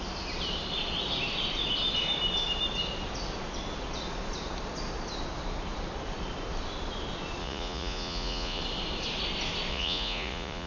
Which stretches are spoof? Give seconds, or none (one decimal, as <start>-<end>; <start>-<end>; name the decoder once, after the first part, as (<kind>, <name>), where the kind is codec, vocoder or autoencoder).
7.4-8.6 (vocoder, Vocos); 9.7-10.7